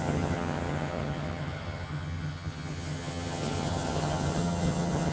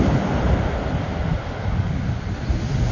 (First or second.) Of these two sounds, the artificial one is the first